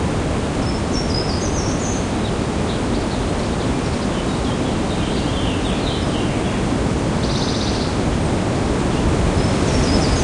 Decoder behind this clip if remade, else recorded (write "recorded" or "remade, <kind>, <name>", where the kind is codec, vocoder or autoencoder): recorded